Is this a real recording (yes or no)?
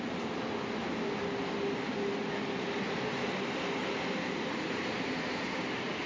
yes